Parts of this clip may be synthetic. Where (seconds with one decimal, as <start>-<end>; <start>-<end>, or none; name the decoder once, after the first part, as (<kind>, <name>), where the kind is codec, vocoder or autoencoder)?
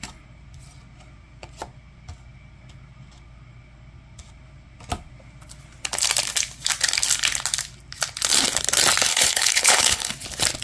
9.1-10.1 (codec, HILCodec)